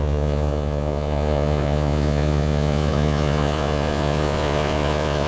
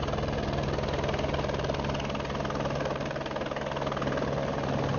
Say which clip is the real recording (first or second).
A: second